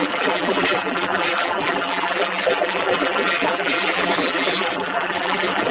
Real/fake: fake